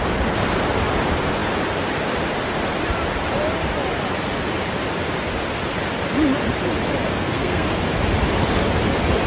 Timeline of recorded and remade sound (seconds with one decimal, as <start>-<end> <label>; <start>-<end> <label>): 0.0-7.1 recorded; 7.1-7.8 remade; 7.8-9.3 recorded

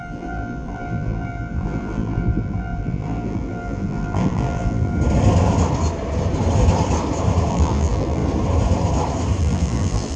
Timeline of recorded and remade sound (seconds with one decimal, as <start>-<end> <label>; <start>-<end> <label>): 0.0-4.9 remade; 4.9-7.5 recorded; 7.5-8.2 remade; 8.2-9.4 recorded; 9.4-10.2 remade

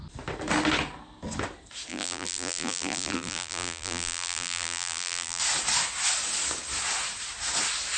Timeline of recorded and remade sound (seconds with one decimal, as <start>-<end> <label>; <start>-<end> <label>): 0.0-1.9 recorded; 1.9-5.4 remade; 5.4-8.0 recorded

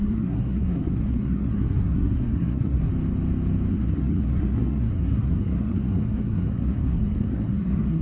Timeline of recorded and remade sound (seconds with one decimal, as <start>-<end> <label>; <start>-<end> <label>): 0.0-2.9 remade; 2.9-3.7 recorded; 3.7-8.0 remade